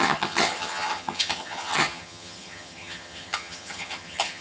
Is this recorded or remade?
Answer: remade